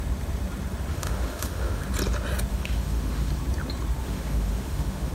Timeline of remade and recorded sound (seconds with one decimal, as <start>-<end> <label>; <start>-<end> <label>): 0.0-0.9 recorded; 0.9-1.8 remade; 1.8-2.5 recorded; 2.5-3.3 remade; 3.3-4.0 recorded; 4.0-5.1 remade